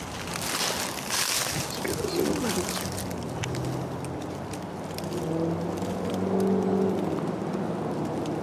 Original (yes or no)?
yes